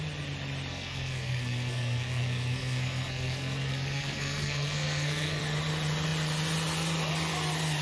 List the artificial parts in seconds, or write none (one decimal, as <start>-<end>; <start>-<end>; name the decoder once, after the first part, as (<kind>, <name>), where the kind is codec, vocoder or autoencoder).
0.7-5.4 (codec, SNAC)